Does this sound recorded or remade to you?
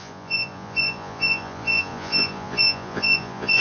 remade